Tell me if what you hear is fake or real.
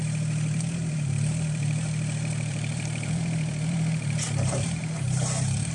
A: fake